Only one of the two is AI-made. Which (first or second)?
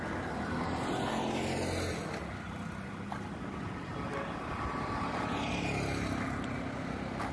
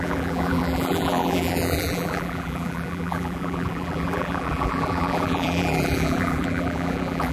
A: second